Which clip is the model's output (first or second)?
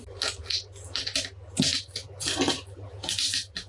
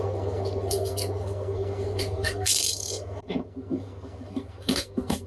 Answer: second